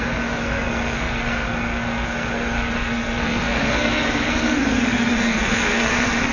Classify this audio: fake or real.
fake